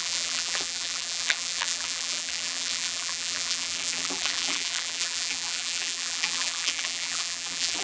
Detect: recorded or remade remade